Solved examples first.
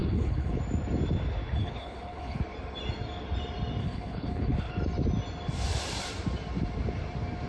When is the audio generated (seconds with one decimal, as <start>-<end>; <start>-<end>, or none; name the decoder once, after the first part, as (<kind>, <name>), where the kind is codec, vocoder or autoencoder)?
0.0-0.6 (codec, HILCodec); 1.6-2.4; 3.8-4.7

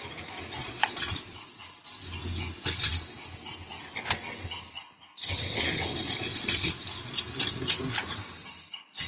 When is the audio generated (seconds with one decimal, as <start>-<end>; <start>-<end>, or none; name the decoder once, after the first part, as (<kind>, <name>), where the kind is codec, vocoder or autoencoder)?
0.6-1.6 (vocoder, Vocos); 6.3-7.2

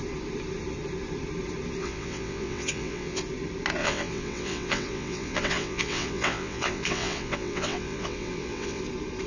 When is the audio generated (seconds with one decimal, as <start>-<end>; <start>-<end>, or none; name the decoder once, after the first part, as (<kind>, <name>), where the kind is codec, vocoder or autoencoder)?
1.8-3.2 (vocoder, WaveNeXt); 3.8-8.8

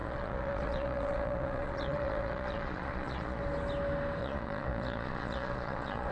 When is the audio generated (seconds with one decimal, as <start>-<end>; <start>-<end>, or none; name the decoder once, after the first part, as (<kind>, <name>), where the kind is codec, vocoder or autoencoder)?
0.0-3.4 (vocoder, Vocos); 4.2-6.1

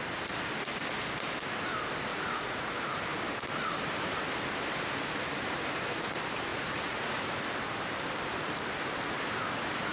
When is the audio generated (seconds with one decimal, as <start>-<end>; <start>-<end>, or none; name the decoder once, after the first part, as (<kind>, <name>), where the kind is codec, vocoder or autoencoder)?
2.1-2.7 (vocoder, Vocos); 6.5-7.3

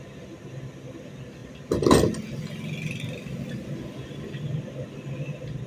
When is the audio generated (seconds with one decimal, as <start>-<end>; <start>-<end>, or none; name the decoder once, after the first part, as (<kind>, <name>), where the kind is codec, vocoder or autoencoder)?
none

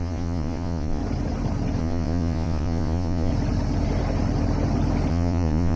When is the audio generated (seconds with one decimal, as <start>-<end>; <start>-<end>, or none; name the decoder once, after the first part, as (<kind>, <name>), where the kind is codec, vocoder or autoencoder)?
0.0-1.0 (vocoder, Vocos); 1.8-3.3; 5.1-5.8

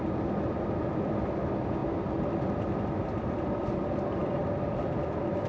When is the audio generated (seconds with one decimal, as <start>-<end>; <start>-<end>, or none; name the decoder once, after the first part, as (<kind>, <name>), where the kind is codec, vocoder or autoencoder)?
none